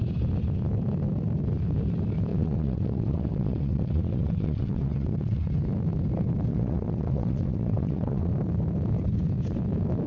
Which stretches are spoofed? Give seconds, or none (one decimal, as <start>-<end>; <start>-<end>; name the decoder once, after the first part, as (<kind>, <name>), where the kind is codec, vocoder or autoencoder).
2.3-5.5 (vocoder, WaveNeXt); 6.5-8.3